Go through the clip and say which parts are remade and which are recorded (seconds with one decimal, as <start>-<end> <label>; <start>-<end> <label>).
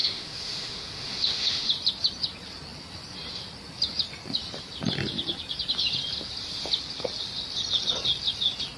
0.0-1.7 remade; 1.7-8.8 recorded